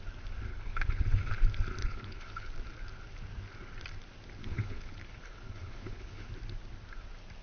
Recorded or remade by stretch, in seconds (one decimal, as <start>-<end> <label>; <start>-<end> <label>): 0.0-0.5 recorded; 0.5-1.3 remade; 1.3-1.8 recorded; 1.8-2.5 remade; 2.5-4.4 recorded; 4.4-6.3 remade; 6.3-7.4 recorded